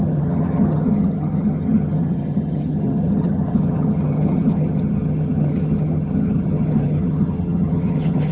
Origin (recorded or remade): remade